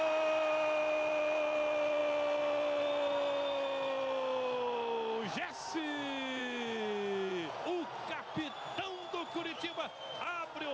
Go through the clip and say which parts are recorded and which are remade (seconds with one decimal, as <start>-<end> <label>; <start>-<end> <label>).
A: 0.0-10.7 recorded